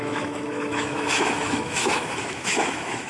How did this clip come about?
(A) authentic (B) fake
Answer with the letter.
B